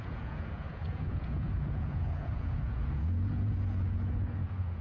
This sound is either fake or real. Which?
fake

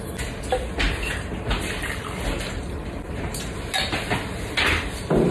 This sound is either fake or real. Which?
real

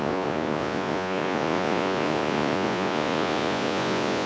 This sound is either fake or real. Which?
fake